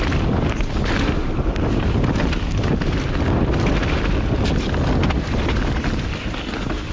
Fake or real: real